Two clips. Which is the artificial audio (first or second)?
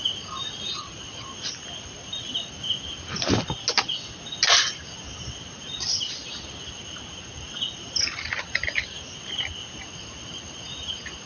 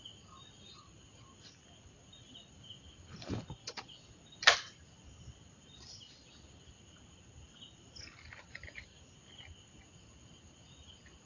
second